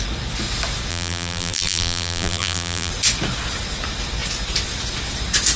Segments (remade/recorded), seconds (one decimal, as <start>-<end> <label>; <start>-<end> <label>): 0.0-0.9 recorded; 0.9-2.9 remade; 2.9-5.6 recorded